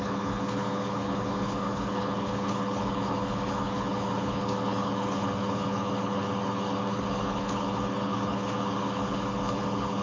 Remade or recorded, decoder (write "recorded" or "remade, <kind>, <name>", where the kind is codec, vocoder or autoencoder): remade, codec, HILCodec